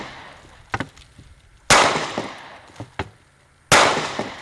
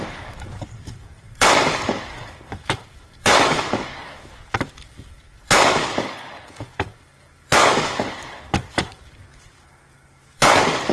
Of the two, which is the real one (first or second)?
first